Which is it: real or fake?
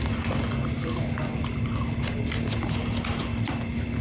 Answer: real